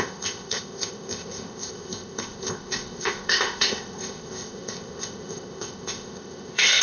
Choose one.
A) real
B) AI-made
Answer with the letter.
B